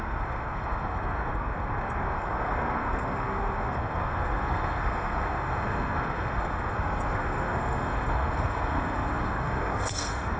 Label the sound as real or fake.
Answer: fake